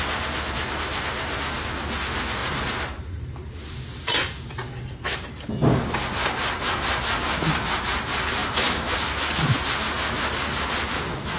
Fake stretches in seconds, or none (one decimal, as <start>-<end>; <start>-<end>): 2.4-5.5